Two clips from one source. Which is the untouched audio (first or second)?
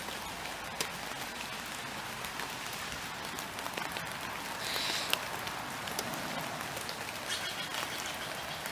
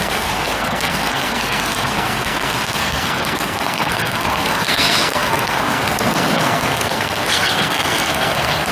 first